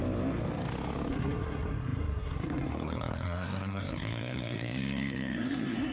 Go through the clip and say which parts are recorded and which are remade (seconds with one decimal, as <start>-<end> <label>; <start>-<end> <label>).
0.0-1.1 recorded; 1.1-5.9 remade